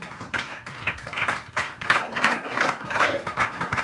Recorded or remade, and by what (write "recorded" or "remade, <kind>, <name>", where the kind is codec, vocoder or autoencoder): remade, codec, SNAC